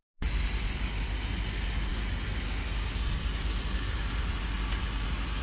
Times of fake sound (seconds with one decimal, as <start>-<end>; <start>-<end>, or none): none